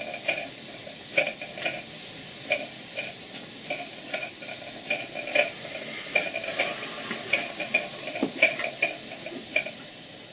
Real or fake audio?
real